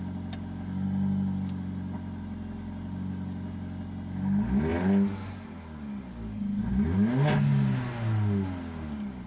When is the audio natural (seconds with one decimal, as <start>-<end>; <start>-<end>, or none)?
0.0-9.3